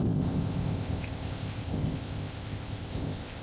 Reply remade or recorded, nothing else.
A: remade